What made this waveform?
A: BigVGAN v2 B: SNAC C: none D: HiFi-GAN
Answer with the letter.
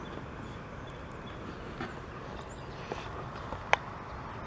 C